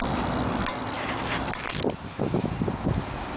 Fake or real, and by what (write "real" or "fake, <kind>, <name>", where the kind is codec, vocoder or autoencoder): real